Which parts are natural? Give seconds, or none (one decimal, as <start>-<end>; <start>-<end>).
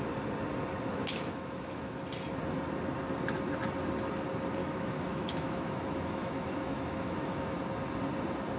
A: 0.0-0.9; 2.0-4.6; 7.6-8.6